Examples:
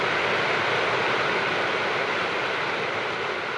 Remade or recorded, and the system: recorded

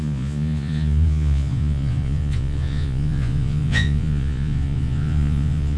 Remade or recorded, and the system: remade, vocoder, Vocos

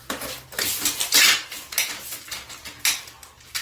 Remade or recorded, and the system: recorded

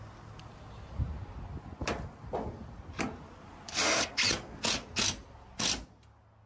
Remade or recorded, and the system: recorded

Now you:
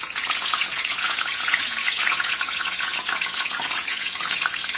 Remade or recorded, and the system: remade, vocoder, Vocos